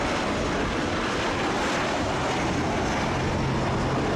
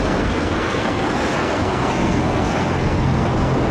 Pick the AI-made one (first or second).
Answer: second